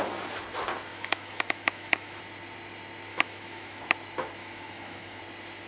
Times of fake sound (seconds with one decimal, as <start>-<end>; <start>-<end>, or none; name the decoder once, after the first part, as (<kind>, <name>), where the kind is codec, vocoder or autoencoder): 0.9-2.2 (autoencoder, DAC-VAE); 3.1-3.8; 4.4-5.2